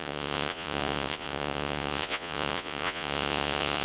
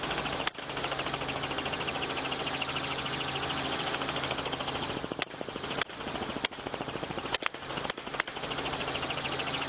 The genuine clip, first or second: second